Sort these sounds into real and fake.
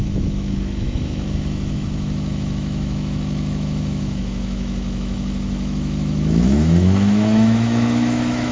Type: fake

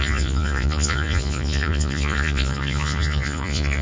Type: fake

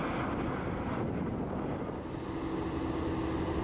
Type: real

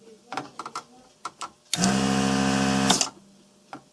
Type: real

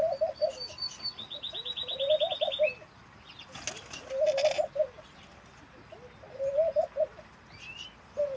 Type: real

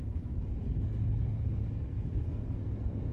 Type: fake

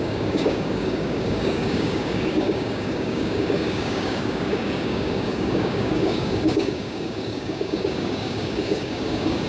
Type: fake